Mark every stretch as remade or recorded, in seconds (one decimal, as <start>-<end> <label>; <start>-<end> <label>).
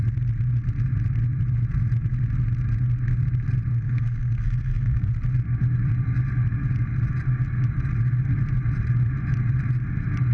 0.0-3.7 recorded; 3.7-5.1 remade; 5.1-10.3 recorded